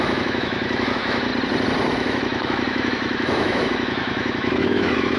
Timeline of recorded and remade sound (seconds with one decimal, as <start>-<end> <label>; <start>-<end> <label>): 0.0-1.3 remade; 1.3-1.9 recorded; 1.9-5.2 remade